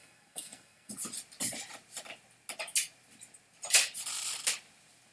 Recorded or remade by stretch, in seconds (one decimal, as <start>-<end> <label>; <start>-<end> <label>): 0.0-0.9 remade; 0.9-5.1 recorded